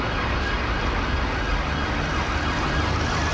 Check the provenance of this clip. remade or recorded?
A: recorded